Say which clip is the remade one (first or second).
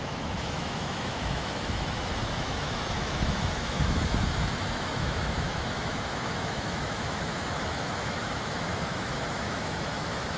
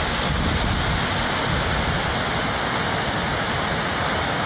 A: first